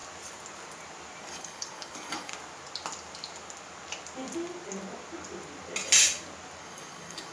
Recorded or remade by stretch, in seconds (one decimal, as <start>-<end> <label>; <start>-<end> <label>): 0.0-1.2 recorded; 1.2-2.3 remade; 2.3-6.6 recorded; 6.6-7.3 remade